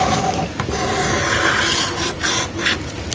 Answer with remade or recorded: recorded